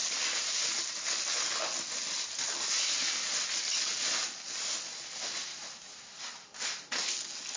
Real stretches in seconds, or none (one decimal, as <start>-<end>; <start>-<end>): 0.0-5.5; 6.2-7.6